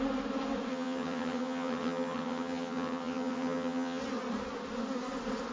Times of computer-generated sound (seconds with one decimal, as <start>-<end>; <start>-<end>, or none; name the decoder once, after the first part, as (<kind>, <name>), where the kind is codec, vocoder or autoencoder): 0.7-4.0 (vocoder, HiFi-GAN)